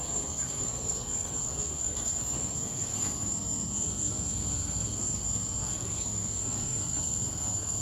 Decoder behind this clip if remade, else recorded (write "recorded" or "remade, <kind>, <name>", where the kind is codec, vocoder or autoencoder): remade, codec, SNAC